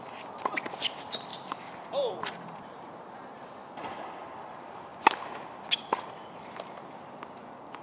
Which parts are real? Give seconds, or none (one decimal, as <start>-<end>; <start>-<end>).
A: 0.0-7.8